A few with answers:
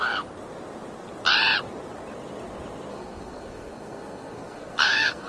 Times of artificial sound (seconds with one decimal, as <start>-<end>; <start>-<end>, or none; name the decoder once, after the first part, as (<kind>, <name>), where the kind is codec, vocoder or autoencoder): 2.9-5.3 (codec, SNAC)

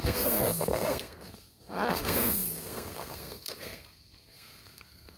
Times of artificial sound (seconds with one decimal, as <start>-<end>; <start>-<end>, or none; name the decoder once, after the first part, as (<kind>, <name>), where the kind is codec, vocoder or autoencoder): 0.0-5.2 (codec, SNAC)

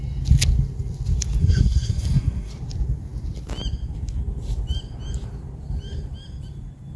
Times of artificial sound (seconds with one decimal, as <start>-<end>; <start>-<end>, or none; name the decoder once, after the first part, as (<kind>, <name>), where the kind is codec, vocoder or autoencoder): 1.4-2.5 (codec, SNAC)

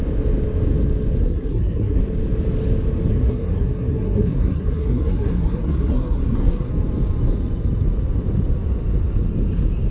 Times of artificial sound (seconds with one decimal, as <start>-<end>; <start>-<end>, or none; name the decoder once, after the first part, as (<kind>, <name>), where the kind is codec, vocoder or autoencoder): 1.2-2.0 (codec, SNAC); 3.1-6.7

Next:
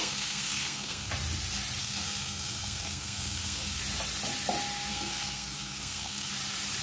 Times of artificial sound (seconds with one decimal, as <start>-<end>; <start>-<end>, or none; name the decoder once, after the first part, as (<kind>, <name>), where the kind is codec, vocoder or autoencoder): 0.0-1.1 (codec, SNAC); 1.8-3.8; 4.9-6.3

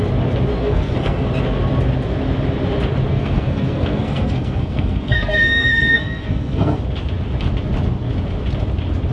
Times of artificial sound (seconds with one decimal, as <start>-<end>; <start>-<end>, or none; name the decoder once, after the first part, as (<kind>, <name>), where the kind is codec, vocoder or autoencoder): 0.6-1.3 (codec, SNAC); 3.1-6.8